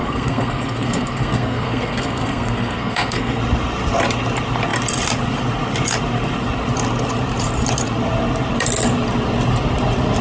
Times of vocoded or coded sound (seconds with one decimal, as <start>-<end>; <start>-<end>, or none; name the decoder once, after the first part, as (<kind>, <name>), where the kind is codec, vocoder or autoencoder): 0.0-3.4 (codec, SNAC)